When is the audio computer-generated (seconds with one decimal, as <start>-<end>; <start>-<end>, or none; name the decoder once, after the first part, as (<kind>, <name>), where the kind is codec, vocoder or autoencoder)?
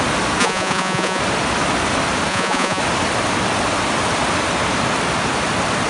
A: 0.4-1.2 (vocoder, Vocos); 2.3-2.8